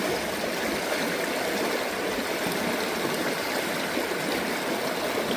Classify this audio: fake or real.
real